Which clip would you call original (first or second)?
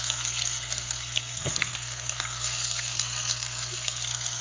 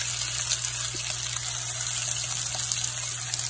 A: second